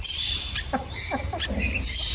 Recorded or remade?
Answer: recorded